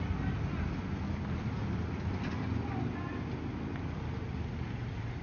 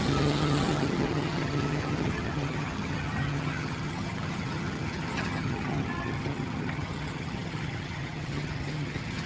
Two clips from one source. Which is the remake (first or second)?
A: second